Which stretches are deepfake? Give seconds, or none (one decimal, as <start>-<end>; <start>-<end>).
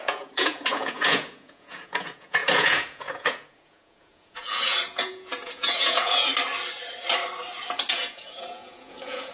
0.0-6.3; 7.9-9.3